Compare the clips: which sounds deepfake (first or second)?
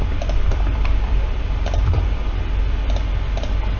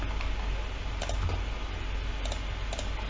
first